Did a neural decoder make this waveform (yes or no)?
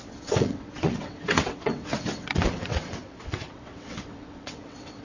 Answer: yes